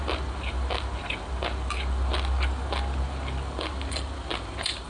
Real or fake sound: real